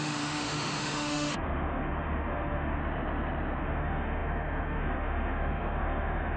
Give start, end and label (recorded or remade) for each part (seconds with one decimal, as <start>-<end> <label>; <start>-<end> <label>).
0.0-2.8 remade; 2.8-3.6 recorded; 3.6-6.4 remade